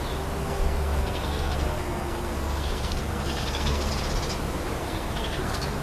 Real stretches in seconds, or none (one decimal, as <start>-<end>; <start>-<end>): 0.0-0.4; 3.9-4.8

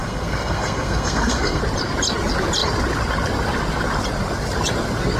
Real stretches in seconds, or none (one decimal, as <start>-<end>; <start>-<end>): 1.6-5.2

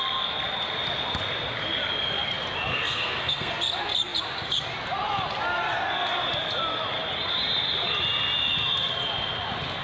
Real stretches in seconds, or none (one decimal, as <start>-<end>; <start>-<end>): 0.0-2.7; 3.5-9.8

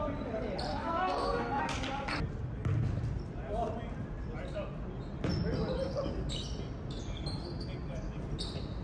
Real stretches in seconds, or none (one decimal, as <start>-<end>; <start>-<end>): 0.0-0.7; 1.6-8.8

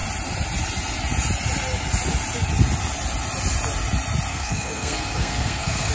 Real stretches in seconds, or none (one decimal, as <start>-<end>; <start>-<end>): 0.0-4.3

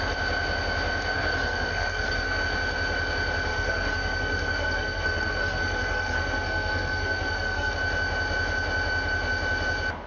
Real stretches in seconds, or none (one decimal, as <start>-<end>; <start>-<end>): 0.0-1.1; 2.4-3.5; 7.7-10.1

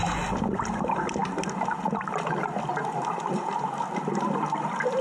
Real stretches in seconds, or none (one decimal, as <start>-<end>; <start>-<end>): 0.0-5.0

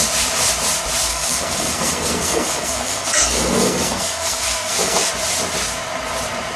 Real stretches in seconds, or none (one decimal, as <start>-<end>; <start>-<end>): 0.0-1.1; 5.1-6.6